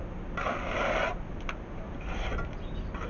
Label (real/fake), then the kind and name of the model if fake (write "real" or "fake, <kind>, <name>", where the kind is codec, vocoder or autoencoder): real